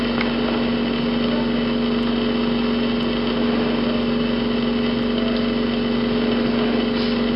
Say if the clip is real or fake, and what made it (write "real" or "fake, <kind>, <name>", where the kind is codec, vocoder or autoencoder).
real